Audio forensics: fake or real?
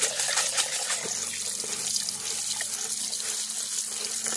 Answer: real